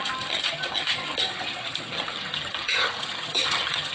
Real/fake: fake